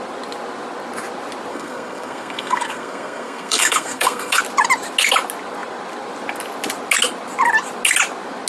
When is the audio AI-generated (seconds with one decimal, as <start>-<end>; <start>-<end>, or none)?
1.5-4.4